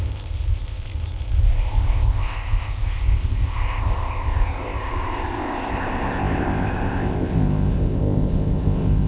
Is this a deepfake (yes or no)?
yes